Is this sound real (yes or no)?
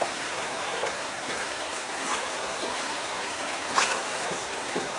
no